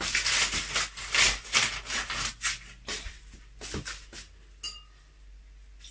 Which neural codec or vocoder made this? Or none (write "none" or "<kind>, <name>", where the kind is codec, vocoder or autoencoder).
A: none